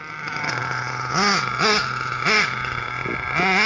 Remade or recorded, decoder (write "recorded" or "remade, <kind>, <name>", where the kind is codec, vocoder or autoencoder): recorded